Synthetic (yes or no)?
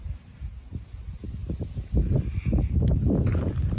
no